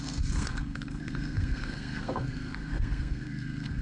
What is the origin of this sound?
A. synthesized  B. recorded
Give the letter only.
A